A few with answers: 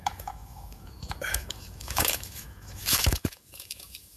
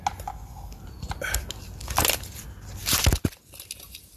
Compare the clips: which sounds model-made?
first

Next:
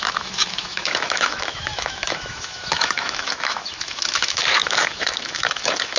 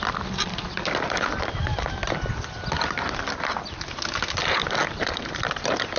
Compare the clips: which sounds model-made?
first